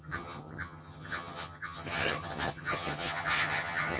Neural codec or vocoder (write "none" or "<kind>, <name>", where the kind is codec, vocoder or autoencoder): vocoder, HiFi-GAN